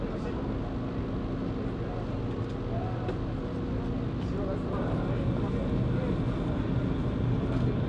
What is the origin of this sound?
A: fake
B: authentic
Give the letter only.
B